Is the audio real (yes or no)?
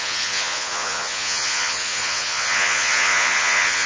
no